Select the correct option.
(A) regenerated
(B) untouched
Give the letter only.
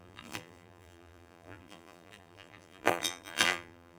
A